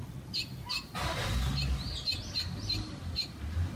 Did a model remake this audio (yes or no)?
no